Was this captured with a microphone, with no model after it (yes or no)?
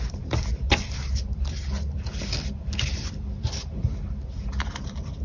no